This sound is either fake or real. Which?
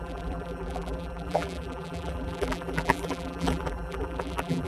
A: fake